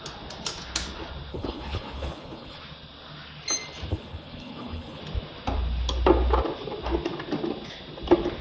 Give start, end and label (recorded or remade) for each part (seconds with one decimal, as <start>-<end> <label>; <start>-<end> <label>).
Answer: 0.0-1.3 recorded; 1.3-2.6 remade; 2.6-3.9 recorded; 3.9-5.0 remade; 5.0-8.4 recorded